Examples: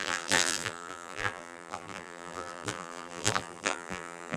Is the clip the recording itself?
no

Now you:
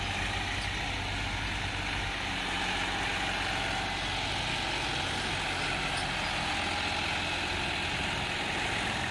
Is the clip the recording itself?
yes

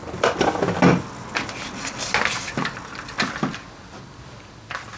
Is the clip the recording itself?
yes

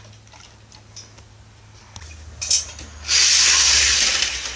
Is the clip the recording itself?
yes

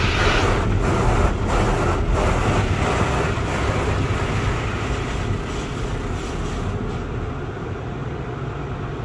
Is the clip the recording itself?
yes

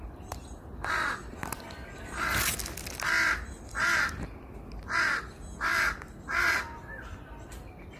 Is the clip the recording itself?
yes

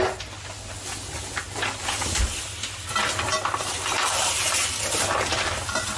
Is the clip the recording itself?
yes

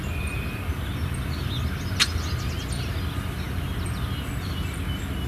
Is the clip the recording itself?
yes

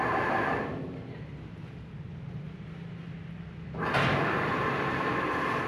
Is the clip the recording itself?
no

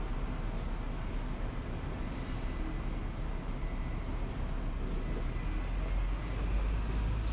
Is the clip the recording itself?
yes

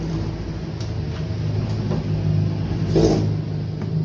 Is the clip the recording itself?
yes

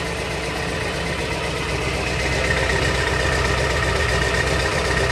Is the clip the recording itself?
no